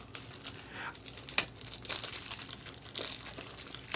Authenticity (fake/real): real